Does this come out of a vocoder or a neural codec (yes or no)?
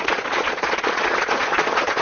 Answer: yes